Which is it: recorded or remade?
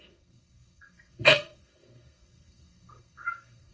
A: remade